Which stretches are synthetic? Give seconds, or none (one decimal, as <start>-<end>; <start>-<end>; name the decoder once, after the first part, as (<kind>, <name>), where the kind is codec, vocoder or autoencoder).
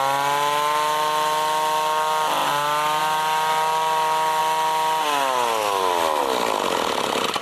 none